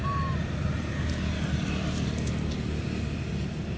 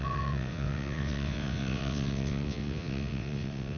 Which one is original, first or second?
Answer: first